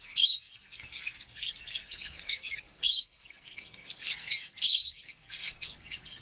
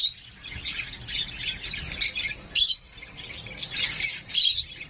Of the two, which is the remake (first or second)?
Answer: first